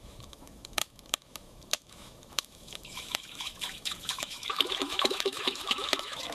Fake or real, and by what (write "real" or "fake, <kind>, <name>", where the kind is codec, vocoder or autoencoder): fake, autoencoder, DAC-VAE